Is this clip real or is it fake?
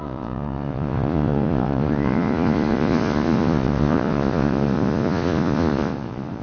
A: fake